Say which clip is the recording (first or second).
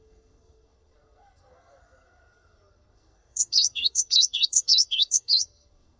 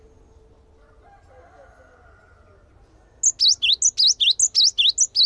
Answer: second